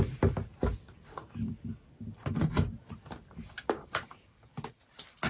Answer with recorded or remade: recorded